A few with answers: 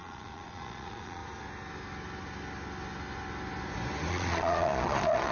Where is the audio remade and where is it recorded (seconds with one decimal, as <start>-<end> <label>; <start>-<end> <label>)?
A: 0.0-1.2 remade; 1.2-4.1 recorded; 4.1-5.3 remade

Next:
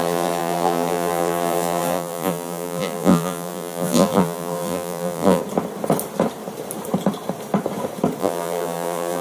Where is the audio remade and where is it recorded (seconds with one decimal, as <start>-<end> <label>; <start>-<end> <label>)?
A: 0.0-5.4 remade; 5.4-8.2 recorded; 8.2-9.2 remade

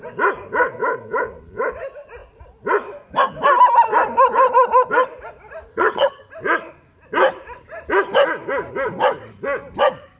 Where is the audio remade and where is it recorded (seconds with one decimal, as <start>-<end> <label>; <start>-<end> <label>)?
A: 0.0-5.7 recorded; 5.7-6.3 remade; 6.3-10.2 recorded

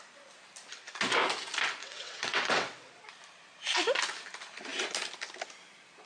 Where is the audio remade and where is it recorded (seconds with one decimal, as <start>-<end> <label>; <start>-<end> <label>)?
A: 0.0-1.8 recorded; 1.8-2.9 remade; 2.9-6.1 recorded